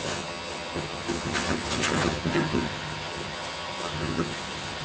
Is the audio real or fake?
fake